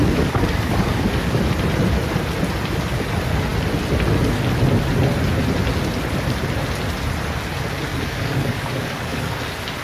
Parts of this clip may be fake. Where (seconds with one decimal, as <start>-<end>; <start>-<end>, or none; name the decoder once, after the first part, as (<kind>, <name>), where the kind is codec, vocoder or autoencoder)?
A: 0.0-1.4 (codec, DAC); 7.9-9.3